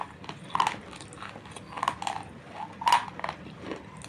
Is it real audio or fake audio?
real